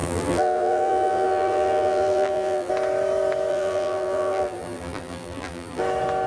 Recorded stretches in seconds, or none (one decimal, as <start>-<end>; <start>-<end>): 2.7-3.5; 5.8-6.3

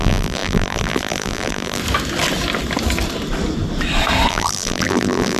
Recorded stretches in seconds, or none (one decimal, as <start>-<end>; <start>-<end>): 1.8-4.3

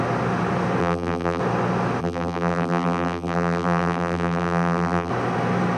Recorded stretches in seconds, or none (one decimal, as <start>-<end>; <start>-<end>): 0.0-0.8; 1.4-2.0; 5.1-5.8

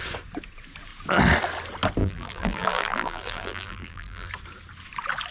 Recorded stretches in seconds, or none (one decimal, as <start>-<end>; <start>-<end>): 0.0-2.0; 4.3-5.3

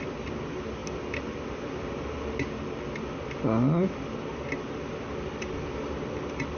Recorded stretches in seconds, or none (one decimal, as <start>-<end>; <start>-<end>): 0.8-4.8

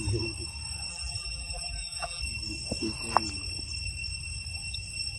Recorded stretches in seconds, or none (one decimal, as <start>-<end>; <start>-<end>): 0.0-0.9; 2.2-5.2

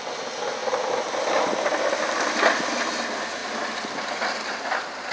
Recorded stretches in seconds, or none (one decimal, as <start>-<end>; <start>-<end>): 0.0-0.6; 1.3-3.4